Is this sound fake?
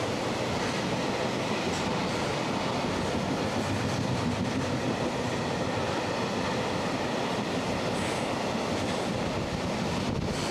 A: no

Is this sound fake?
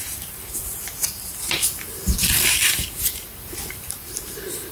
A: yes